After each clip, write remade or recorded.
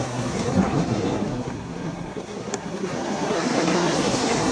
remade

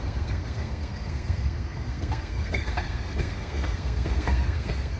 remade